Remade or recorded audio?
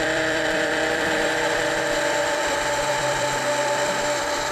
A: remade